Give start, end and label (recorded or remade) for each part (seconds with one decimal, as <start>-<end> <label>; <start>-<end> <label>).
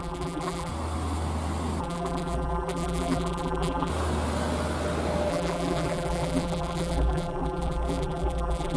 0.0-0.7 remade; 0.7-1.8 recorded; 1.8-3.9 remade; 3.9-5.3 recorded; 5.3-8.8 remade